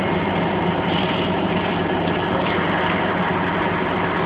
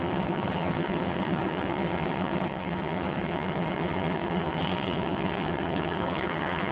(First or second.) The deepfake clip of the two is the second